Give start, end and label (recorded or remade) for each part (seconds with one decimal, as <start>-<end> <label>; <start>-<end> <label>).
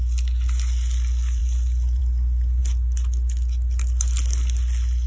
0.0-5.1 recorded